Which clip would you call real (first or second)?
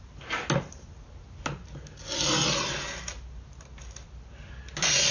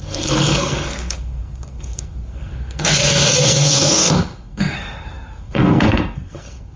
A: first